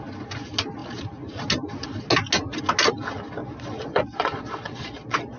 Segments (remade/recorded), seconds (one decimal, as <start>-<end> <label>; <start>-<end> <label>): 0.0-3.4 recorded; 3.4-5.4 remade